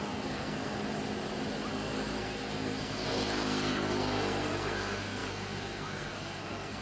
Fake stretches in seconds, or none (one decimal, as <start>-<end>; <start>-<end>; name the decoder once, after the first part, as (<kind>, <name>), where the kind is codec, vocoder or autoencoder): 0.0-0.8 (codec, SNAC); 1.7-6.8